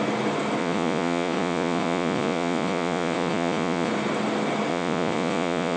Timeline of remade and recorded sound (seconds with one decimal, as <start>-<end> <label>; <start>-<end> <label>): 0.0-0.6 recorded; 0.6-3.9 remade; 3.9-4.7 recorded; 4.7-5.8 remade

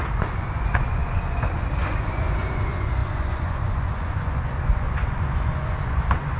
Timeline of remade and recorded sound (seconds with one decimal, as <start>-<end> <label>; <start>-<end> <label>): 0.0-6.4 remade

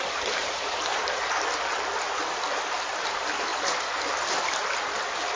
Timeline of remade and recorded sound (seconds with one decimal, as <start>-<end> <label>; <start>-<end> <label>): 0.0-5.4 recorded

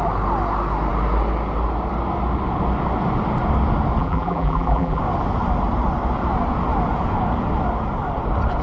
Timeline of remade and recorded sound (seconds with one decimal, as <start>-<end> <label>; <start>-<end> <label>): 0.0-4.0 recorded; 4.0-5.0 remade; 5.0-8.6 recorded

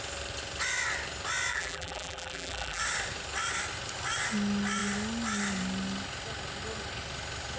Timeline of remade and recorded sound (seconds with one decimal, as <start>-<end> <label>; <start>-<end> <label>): 0.0-1.5 recorded; 1.5-2.8 remade; 2.8-7.6 recorded

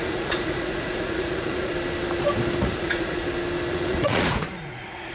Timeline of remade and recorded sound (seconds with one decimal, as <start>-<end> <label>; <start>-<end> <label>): 0.0-1.7 remade; 1.7-2.6 recorded; 2.6-3.2 remade; 3.2-3.7 recorded; 3.7-5.1 remade

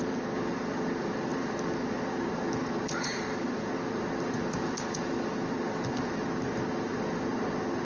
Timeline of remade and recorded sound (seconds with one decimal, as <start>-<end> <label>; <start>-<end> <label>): 0.0-7.8 recorded

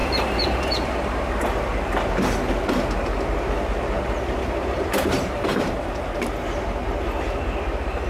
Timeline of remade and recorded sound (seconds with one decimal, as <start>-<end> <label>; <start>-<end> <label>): 0.0-0.9 remade; 0.9-4.7 recorded; 4.7-6.3 remade; 6.3-8.1 recorded